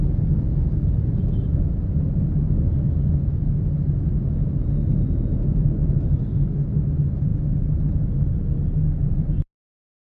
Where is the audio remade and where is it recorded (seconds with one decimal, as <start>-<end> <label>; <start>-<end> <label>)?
0.0-0.8 recorded; 0.8-1.6 remade; 1.6-9.0 recorded; 9.0-9.7 remade; 9.7-10.2 recorded